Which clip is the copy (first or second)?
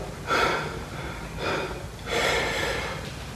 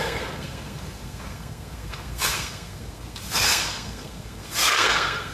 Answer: second